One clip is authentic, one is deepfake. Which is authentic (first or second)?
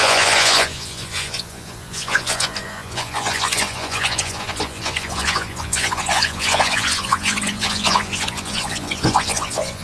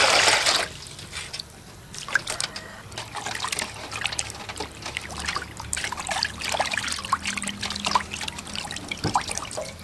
second